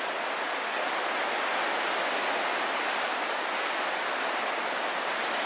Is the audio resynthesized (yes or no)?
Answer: no